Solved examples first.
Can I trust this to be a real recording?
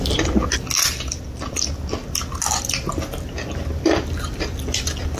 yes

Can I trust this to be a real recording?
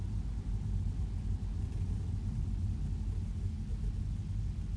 yes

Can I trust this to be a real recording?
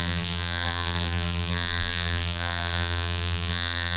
no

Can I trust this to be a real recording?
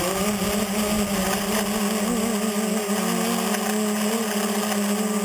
yes